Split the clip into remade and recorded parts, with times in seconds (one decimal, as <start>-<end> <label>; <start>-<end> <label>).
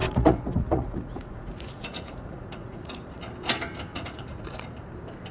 0.0-3.2 remade; 3.2-3.9 recorded; 3.9-4.6 remade; 4.6-5.3 recorded